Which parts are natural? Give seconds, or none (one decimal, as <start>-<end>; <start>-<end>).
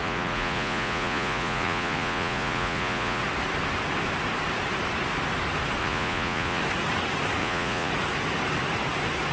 3.2-5.8; 6.6-7.4; 7.9-9.3